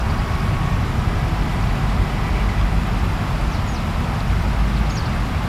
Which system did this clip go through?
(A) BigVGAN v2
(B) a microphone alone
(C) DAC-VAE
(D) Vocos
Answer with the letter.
B